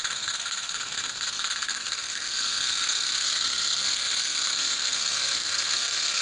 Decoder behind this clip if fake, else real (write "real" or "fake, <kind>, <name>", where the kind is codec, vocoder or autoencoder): fake, codec, SNAC